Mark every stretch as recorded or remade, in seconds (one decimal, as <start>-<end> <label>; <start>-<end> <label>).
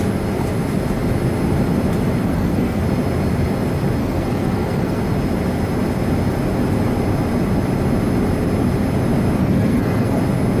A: 0.0-2.2 recorded; 2.2-2.8 remade; 2.8-4.0 recorded; 4.0-5.0 remade; 5.0-9.4 recorded; 9.4-10.2 remade; 10.2-10.6 recorded